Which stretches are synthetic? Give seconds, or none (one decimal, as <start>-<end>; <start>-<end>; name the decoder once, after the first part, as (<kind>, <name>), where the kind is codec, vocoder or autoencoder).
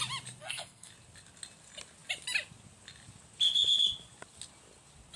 0.4-0.9 (codec, SNAC)